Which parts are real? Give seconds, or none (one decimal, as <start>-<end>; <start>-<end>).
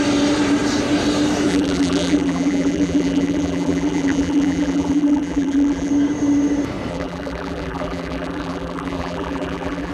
0.0-1.5; 5.9-6.9